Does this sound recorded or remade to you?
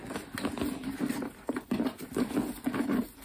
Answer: recorded